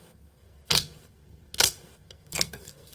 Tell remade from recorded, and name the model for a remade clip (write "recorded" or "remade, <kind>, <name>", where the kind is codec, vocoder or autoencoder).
remade, codec, SNAC